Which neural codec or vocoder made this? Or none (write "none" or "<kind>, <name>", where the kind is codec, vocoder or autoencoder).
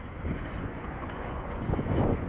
vocoder, Vocos